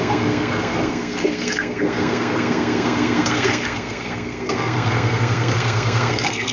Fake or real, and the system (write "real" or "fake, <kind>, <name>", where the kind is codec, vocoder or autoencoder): fake, codec, SNAC